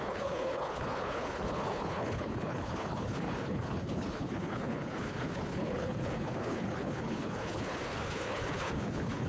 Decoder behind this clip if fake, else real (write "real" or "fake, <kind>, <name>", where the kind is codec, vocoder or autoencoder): fake, codec, HILCodec